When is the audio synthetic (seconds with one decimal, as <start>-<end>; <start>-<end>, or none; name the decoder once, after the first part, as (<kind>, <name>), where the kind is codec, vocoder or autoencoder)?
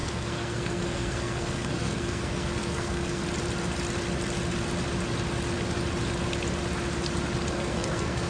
0.0-3.2 (codec, SNAC); 7.5-8.3